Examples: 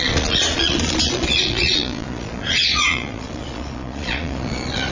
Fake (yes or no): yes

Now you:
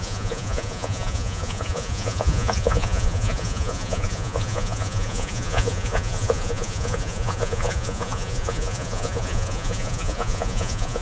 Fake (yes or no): yes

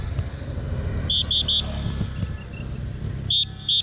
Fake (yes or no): no